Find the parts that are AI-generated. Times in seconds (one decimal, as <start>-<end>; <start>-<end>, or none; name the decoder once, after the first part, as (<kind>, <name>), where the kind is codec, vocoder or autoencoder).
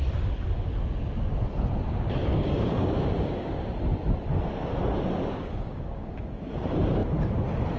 2.2-3.5 (codec, DAC); 5.2-6.5